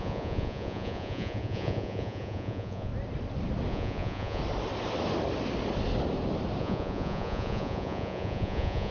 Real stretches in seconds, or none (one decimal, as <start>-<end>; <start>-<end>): 2.9-3.7; 4.4-6.6